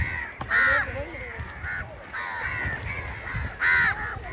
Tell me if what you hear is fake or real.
real